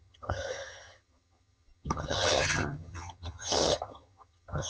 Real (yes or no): no